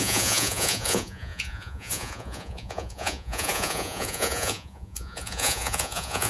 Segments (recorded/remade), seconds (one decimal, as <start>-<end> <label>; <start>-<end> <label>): 0.0-6.3 remade